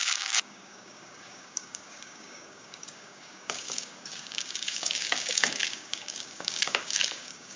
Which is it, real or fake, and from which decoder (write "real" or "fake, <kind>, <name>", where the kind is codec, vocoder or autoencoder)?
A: fake, codec, DAC